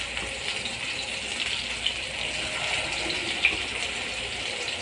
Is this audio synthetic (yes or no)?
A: no